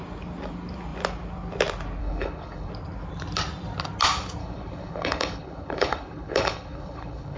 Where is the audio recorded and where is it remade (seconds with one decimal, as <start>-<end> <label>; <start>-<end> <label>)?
0.0-2.0 recorded; 2.0-2.7 remade; 2.7-4.4 recorded; 4.4-7.4 remade